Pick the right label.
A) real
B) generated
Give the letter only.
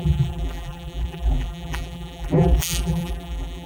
B